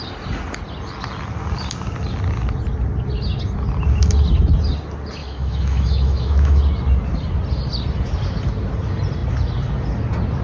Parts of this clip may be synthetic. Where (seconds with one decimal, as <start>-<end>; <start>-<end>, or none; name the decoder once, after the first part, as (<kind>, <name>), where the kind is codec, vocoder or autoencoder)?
5.2-6.6 (autoencoder, DAC-VAE)